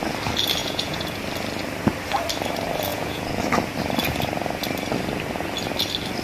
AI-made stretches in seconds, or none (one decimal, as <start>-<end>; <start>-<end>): 0.6-1.2; 2.9-3.4